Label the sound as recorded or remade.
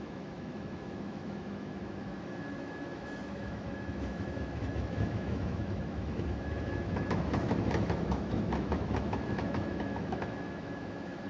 remade